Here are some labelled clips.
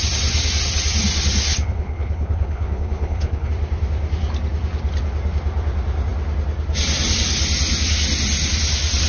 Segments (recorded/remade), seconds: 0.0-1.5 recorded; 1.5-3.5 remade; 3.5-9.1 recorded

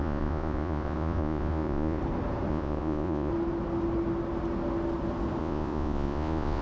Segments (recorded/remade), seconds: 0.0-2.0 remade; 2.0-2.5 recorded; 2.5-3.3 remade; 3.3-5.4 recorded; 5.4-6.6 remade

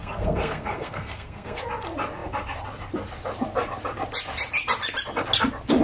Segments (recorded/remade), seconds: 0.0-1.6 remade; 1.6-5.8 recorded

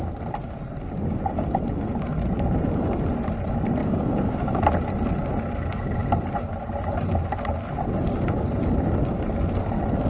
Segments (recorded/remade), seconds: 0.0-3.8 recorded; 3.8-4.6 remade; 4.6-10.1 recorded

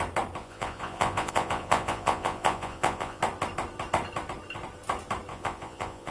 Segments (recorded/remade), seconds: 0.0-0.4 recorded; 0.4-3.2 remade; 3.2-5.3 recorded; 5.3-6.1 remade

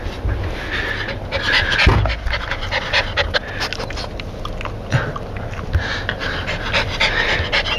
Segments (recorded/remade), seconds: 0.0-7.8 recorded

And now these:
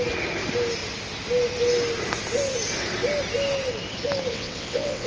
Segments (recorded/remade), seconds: 0.0-4.3 recorded; 4.3-5.1 remade